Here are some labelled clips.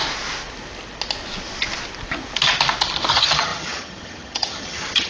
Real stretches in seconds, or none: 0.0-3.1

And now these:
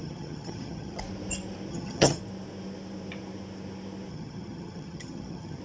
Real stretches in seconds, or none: 1.0-1.7; 2.2-4.1

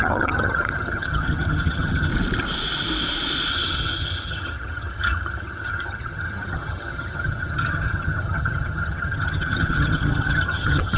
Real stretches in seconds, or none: 2.1-3.5

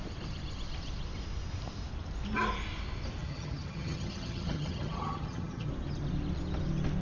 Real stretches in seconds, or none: 0.0-3.2; 5.7-7.0

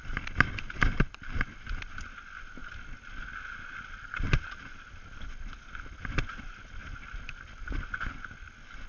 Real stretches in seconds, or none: 0.0-8.9